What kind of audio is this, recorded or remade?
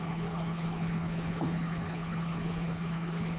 remade